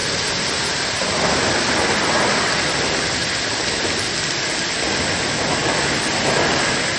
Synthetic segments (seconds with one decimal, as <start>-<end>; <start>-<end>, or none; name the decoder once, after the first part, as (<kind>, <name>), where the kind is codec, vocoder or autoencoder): 0.0-1.2 (vocoder, BigVGAN v2); 3.2-3.8